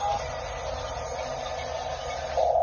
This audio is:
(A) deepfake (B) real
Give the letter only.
B